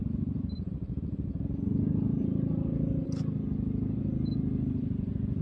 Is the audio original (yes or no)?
yes